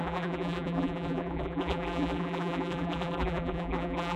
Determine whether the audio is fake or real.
fake